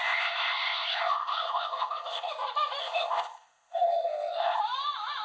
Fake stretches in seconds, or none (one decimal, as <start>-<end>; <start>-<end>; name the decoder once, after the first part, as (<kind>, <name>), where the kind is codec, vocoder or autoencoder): 0.0-2.3 (codec, ZipCodec); 2.8-4.6